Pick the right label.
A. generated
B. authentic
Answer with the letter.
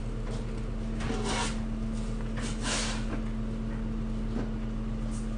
B